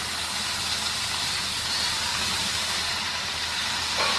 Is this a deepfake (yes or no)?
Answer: yes